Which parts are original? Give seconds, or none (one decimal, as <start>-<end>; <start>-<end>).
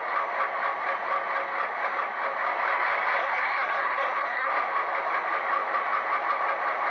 0.0-3.2; 4.5-6.9